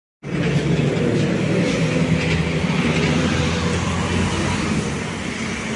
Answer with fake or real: real